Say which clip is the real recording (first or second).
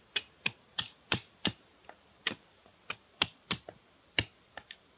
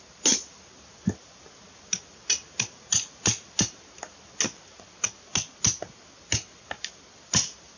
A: second